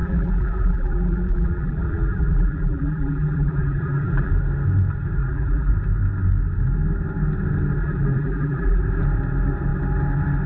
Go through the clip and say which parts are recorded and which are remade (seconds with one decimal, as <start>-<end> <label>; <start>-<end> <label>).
0.0-4.3 remade; 4.3-5.2 recorded; 5.2-5.7 remade; 5.7-7.8 recorded; 7.8-8.8 remade; 8.8-10.5 recorded